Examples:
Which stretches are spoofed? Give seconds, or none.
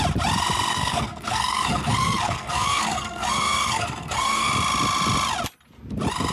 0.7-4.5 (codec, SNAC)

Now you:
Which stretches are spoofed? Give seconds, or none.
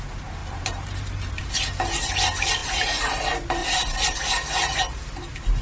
0.4-1.5 (vocoder, BigVGAN v2); 2.6-3.2; 3.6-5.6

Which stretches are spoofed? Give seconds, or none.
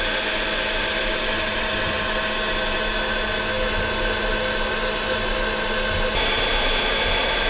1.1-2.1 (vocoder, BigVGAN v2)